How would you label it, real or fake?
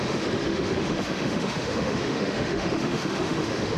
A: fake